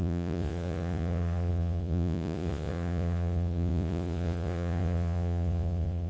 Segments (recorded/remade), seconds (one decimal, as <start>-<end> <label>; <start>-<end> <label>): 0.0-6.1 remade